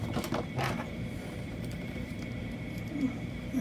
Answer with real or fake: fake